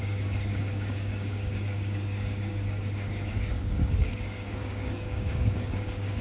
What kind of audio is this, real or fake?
fake